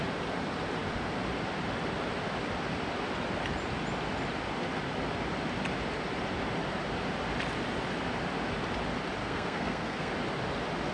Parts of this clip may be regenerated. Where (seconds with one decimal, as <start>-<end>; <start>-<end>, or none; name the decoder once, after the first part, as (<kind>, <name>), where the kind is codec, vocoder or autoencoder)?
9.2-10.1 (codec, SNAC)